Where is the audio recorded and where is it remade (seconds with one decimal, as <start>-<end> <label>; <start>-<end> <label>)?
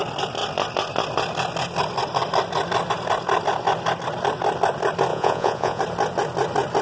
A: 0.0-5.1 recorded; 5.1-5.8 remade; 5.8-6.8 recorded